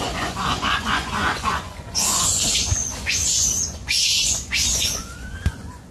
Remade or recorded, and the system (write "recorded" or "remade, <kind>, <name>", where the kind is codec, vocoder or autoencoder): remade, vocoder, Vocos